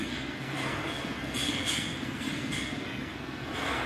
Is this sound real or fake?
fake